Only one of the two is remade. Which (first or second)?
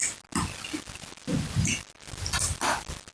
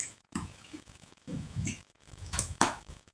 second